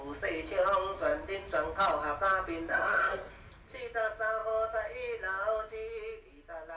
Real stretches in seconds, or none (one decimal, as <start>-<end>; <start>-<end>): 0.0-2.7; 3.3-6.8